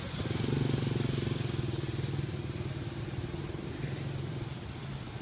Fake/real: real